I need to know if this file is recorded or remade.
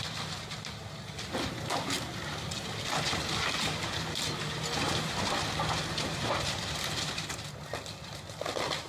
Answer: recorded